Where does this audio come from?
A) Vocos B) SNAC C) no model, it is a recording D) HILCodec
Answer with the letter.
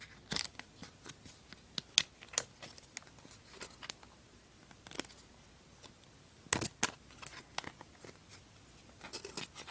C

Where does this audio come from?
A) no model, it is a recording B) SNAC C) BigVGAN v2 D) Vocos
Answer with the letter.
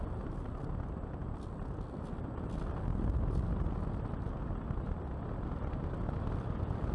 A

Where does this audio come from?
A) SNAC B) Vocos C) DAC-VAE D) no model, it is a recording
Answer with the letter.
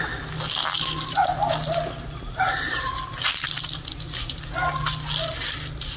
D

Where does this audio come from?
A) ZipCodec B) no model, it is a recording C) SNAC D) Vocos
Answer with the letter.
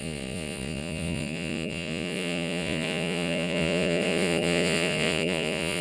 D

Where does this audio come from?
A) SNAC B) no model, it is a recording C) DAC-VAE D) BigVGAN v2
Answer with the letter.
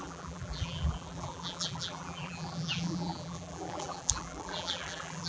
D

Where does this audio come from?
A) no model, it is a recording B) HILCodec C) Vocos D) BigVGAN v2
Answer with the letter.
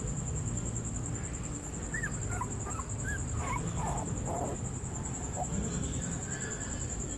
A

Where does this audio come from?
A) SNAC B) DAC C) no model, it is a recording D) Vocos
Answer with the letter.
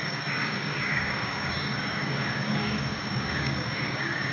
B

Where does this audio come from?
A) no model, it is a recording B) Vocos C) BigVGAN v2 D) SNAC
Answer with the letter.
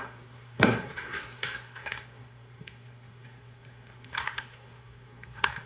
D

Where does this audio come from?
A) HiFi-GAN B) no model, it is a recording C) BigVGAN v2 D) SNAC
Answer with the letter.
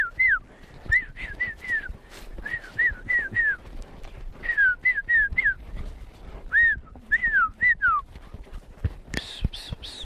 B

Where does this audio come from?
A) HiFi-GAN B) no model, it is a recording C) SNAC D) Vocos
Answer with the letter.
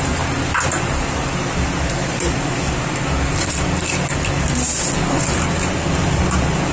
B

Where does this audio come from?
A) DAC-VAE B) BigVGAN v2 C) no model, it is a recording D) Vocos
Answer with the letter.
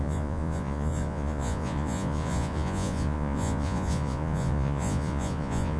D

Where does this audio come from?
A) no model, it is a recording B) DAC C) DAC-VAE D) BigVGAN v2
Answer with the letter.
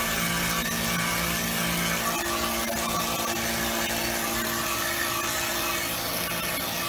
A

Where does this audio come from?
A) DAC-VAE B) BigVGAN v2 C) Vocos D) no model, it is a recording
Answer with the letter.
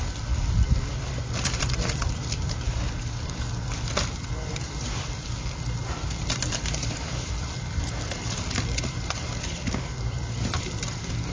B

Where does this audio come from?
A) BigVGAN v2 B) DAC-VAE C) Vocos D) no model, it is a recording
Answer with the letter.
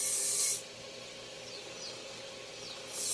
D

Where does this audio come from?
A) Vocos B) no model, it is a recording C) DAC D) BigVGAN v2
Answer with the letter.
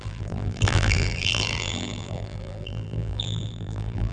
D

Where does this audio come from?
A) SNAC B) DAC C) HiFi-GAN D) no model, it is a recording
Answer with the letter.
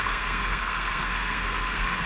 A